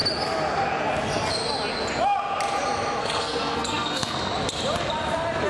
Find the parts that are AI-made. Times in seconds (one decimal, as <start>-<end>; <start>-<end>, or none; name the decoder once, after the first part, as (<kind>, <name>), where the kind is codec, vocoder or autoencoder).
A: 3.0-4.3 (codec, SNAC)